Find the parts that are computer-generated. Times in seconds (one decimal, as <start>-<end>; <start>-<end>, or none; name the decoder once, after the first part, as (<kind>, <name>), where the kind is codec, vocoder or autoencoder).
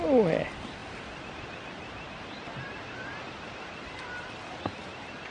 none